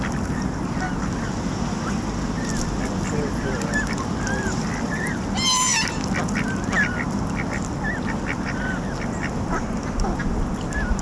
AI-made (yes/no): no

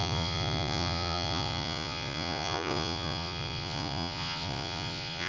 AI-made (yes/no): yes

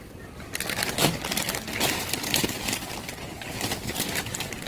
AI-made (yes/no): no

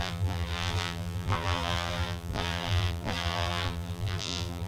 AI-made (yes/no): yes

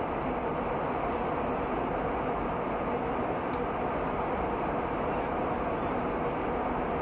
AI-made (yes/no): no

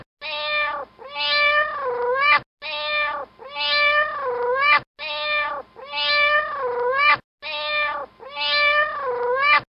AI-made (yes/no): no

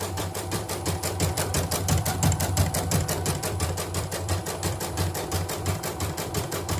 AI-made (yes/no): yes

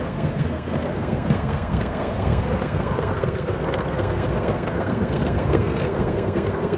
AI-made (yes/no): yes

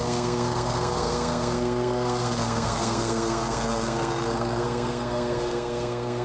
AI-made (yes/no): yes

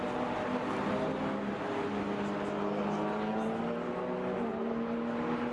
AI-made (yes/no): no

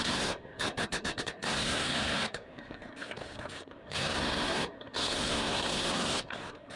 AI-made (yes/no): yes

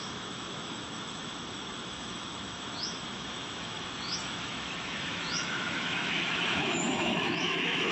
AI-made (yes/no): yes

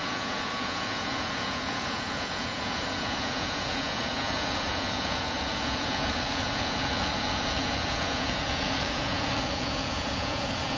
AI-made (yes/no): yes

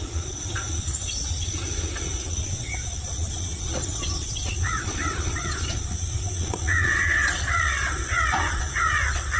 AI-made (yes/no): yes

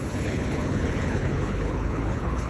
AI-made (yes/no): yes